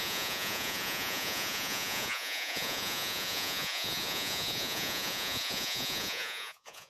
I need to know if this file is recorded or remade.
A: remade